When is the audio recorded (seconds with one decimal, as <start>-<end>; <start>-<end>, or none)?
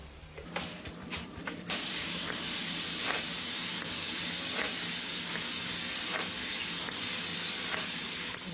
3.2-8.5